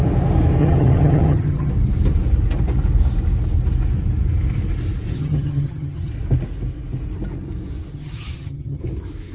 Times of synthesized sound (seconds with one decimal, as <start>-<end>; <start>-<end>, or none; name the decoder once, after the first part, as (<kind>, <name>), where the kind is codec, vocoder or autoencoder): 0.6-1.7 (vocoder, HiFi-GAN); 5.1-6.1; 7.9-8.8